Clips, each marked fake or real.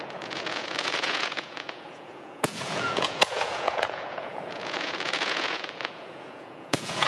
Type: fake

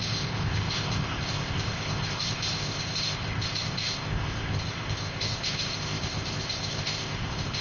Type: fake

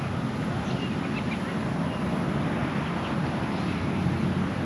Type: real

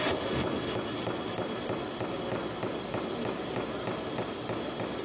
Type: real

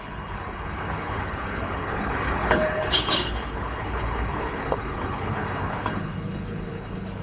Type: fake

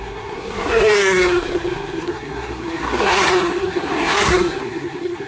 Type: fake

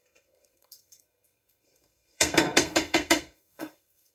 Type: fake